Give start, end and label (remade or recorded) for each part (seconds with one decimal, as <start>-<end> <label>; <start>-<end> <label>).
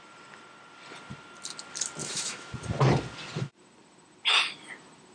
0.0-2.0 recorded; 2.0-2.5 remade; 2.5-5.1 recorded